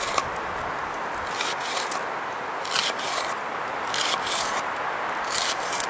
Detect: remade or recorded recorded